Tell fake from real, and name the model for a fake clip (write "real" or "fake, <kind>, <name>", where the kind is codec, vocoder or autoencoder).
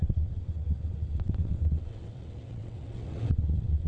fake, vocoder, WaveNeXt